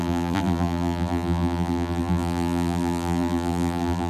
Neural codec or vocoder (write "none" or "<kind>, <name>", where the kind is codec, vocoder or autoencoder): vocoder, BigVGAN v2